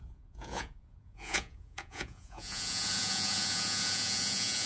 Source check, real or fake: fake